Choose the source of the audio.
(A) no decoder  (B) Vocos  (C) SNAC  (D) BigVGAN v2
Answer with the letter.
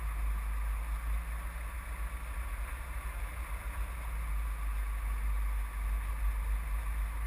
A